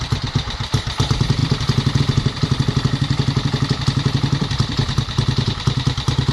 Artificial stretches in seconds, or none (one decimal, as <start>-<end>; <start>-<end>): 0.0-6.3